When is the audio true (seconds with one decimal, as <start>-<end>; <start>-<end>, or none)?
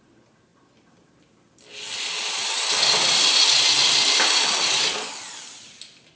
0.0-6.2